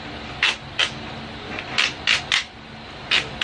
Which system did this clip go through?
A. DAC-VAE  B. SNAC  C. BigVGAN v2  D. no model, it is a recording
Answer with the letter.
D